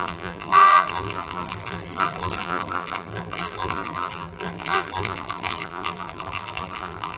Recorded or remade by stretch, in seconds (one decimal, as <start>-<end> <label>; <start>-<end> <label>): 0.0-7.2 remade